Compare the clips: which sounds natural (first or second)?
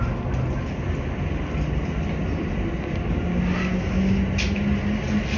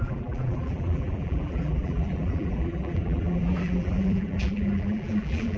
first